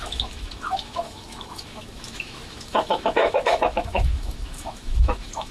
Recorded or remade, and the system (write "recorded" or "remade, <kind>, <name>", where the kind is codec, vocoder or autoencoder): remade, autoencoder, DAC-VAE